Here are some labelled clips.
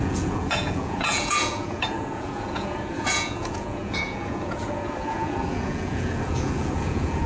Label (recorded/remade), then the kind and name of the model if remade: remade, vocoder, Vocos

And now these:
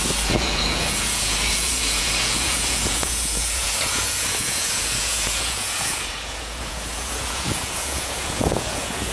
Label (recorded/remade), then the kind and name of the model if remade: remade, vocoder, Vocos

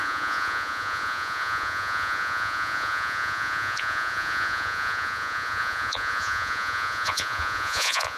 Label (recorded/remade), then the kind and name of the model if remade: remade, vocoder, Vocos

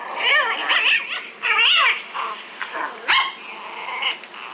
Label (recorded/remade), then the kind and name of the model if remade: recorded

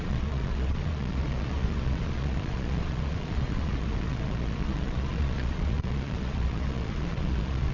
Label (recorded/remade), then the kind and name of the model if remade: remade, vocoder, Vocos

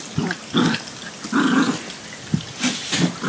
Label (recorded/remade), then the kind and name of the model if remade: recorded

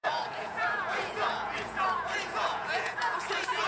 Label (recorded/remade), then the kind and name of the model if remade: remade, vocoder, Vocos